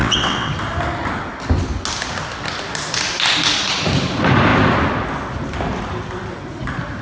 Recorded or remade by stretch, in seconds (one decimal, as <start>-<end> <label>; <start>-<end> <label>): 0.0-0.5 remade; 0.5-7.0 recorded